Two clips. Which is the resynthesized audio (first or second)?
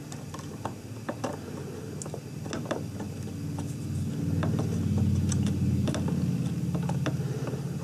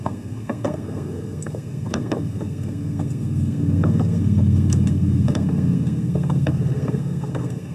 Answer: second